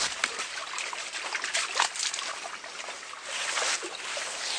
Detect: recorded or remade recorded